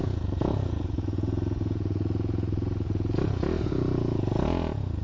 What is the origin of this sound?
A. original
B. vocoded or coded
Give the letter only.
B